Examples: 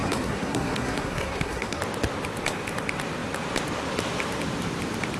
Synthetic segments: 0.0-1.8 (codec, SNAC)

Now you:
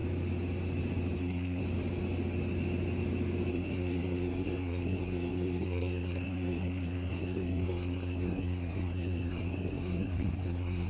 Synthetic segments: 1.2-1.6 (codec, SNAC); 3.5-10.9

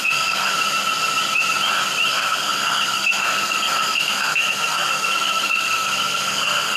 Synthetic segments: 0.0-0.6 (codec, SNAC); 2.1-6.8